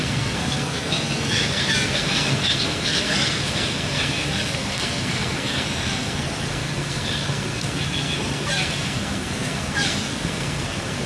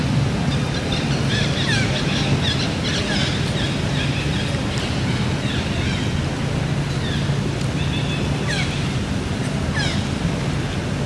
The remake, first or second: first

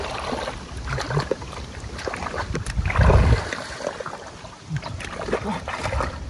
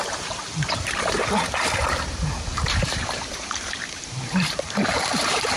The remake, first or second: second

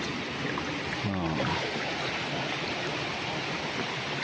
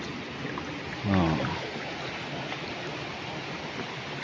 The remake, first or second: first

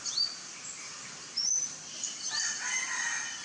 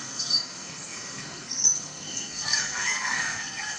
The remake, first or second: second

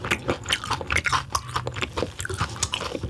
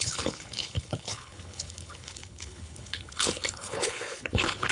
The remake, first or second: second